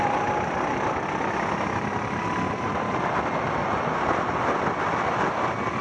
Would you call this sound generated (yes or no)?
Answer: no